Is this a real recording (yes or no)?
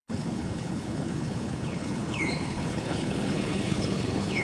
no